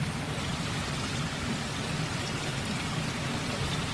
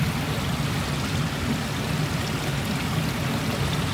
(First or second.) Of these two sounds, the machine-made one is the first